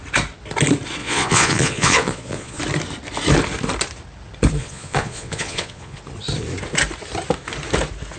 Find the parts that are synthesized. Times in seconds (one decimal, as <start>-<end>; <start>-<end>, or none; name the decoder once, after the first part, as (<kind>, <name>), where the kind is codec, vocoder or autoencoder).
1.0-2.6 (vocoder, Vocos); 4.6-6.0